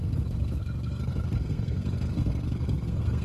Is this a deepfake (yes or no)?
yes